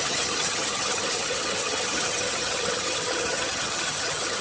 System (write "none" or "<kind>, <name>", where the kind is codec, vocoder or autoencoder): vocoder, HiFi-GAN